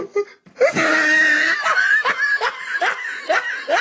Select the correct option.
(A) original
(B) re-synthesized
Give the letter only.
A